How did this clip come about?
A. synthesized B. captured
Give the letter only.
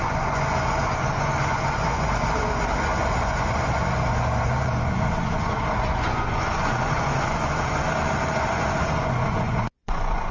A